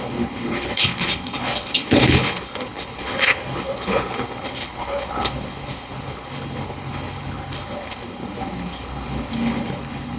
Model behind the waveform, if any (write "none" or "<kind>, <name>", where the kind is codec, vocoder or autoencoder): codec, HILCodec